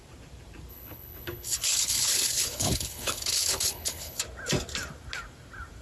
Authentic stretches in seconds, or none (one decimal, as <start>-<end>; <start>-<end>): 0.0-0.7; 4.2-5.8